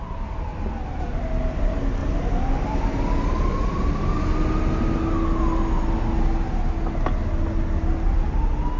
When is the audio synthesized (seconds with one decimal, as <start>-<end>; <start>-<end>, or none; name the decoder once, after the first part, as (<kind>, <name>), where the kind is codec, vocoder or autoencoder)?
2.0-3.0 (vocoder, BigVGAN v2)